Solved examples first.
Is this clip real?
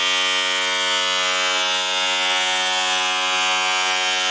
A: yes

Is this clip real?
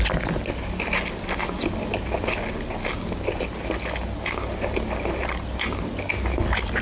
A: yes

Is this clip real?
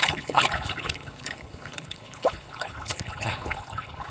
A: no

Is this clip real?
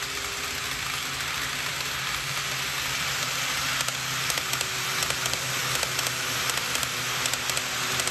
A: yes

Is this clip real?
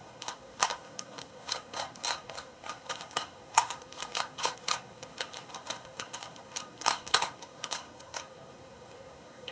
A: no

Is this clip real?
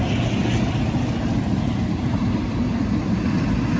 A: yes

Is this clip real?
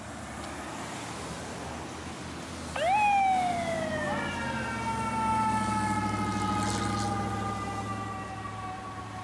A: yes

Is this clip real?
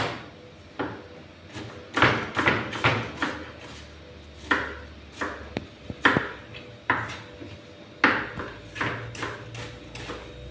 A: yes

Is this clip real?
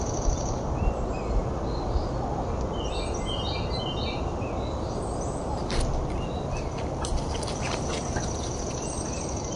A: yes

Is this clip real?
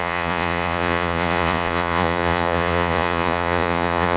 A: no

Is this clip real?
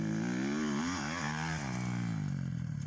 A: yes